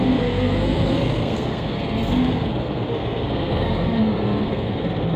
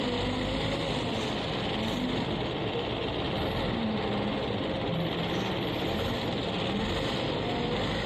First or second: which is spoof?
first